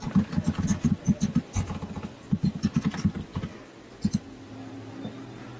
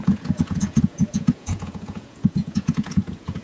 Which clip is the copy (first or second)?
second